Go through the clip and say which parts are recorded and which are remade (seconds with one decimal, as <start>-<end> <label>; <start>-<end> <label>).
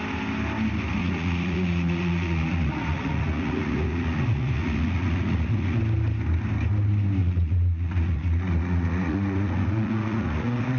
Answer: 0.0-1.0 recorded; 1.0-5.8 remade; 5.8-7.2 recorded; 7.2-10.8 remade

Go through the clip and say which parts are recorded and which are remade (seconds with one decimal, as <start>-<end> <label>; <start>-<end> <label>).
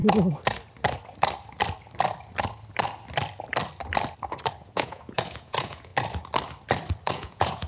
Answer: 0.0-4.6 recorded; 4.6-5.9 remade; 5.9-7.1 recorded; 7.1-7.7 remade